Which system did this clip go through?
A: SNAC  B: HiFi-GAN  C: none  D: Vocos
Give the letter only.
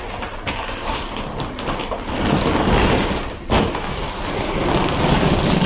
C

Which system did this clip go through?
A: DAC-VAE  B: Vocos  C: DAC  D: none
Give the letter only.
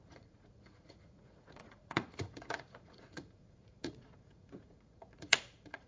B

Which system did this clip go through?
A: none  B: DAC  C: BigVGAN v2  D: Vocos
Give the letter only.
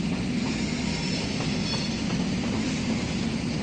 A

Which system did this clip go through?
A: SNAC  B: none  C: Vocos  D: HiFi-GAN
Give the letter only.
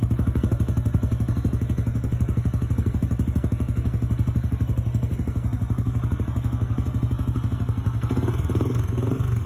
A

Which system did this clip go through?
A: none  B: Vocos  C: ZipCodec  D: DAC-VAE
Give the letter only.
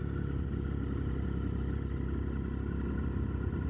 A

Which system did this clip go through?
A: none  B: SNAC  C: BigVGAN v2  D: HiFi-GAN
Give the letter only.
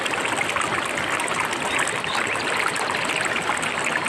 A